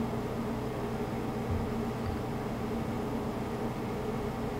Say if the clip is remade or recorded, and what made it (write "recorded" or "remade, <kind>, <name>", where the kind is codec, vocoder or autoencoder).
recorded